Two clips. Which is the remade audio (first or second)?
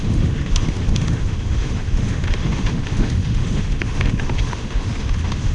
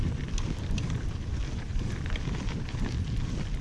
first